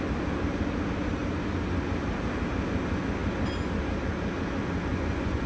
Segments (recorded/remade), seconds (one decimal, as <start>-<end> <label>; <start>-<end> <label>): 0.0-4.9 recorded; 4.9-5.5 remade